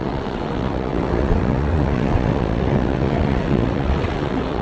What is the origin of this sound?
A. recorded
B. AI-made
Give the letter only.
B